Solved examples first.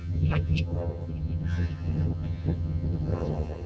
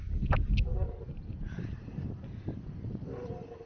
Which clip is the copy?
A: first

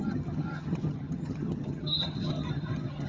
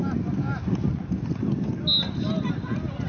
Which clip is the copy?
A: first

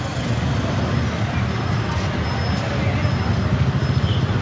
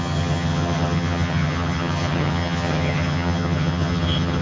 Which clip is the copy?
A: second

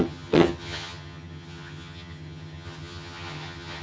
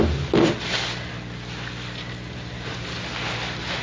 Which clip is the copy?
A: first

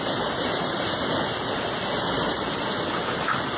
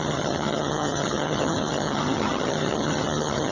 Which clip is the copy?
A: second